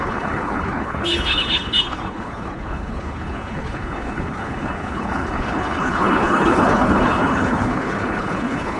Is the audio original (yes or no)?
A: no